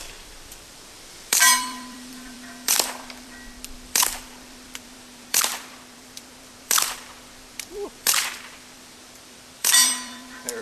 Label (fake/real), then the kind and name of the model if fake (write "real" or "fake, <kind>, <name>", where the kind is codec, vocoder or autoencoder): fake, vocoder, BigVGAN v2